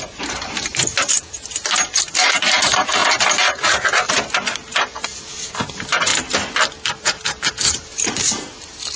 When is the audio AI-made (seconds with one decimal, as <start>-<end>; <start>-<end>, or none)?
0.0-6.1; 7.0-9.0